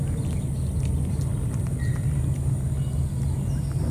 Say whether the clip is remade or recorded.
recorded